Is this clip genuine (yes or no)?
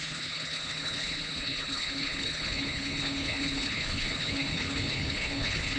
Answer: no